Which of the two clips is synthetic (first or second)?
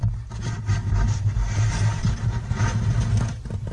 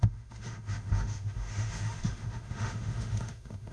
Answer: second